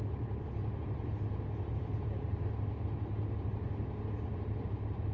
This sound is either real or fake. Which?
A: real